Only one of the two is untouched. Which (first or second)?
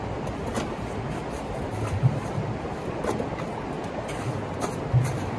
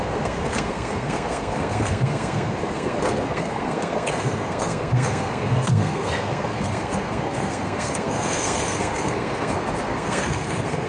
first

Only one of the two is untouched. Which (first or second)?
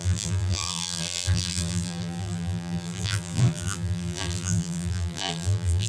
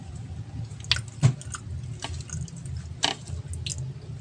second